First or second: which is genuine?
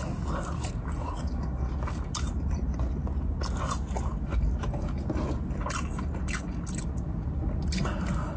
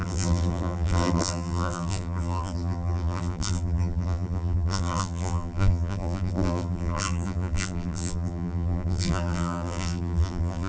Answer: first